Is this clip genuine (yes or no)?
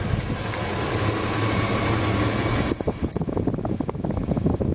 yes